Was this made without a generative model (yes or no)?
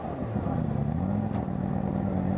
yes